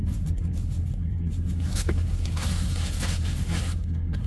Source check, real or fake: fake